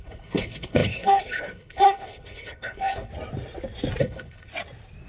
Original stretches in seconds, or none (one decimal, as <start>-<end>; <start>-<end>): 3.1-4.0; 4.5-5.1